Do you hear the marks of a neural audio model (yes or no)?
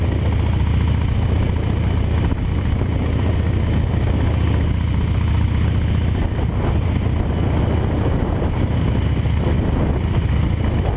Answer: no